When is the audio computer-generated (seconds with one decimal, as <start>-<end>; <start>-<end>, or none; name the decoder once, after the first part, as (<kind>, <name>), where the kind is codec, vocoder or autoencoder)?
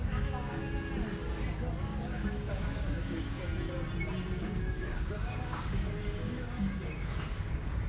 0.0-0.6 (codec, DAC); 1.8-3.5; 4.4-7.9